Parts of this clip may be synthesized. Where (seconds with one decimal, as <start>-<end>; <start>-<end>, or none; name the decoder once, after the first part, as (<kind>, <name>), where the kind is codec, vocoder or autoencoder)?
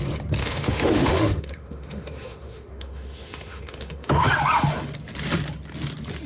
0.4-4.2 (autoencoder, DAC-VAE)